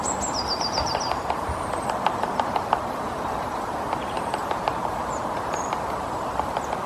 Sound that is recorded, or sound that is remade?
remade